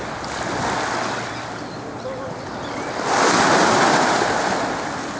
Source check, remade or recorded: recorded